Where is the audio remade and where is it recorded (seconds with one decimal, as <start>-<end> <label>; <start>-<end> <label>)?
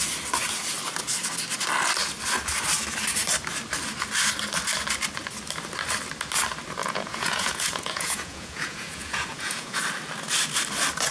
0.0-6.8 recorded; 6.8-9.8 remade; 9.8-11.1 recorded